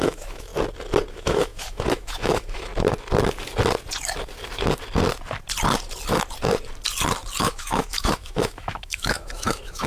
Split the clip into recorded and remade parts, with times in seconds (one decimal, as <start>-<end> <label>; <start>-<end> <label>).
0.0-0.5 remade; 0.5-1.1 recorded; 1.1-2.7 remade; 2.7-7.4 recorded; 7.4-9.9 remade